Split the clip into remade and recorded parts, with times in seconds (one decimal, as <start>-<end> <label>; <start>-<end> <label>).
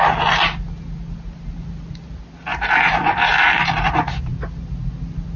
0.0-2.5 recorded; 2.5-3.9 remade; 3.9-5.4 recorded